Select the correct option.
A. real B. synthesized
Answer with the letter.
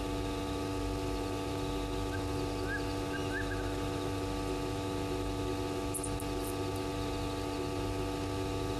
A